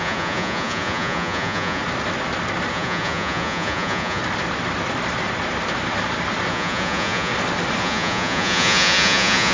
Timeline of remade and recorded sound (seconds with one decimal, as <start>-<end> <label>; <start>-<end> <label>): 0.0-1.8 remade; 1.8-2.7 recorded; 2.7-4.2 remade; 4.2-6.5 recorded; 6.5-7.3 remade; 7.3-7.8 recorded; 7.8-9.5 remade